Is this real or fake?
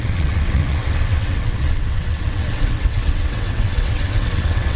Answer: fake